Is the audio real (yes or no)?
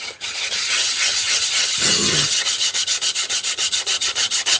no